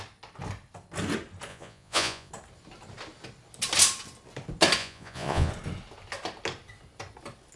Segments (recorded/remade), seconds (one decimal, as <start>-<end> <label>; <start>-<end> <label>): 0.0-1.5 recorded; 1.5-2.3 remade; 2.3-4.8 recorded; 4.8-5.5 remade; 5.5-7.6 recorded